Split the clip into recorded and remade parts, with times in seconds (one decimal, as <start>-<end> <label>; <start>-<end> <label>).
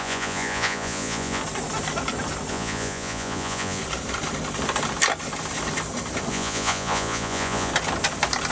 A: 0.0-1.4 remade; 1.4-2.5 recorded; 2.5-3.8 remade; 3.8-6.3 recorded; 6.3-7.7 remade; 7.7-8.5 recorded